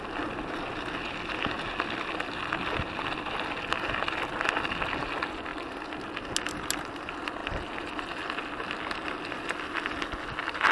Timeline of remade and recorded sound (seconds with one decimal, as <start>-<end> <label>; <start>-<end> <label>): 0.0-10.7 recorded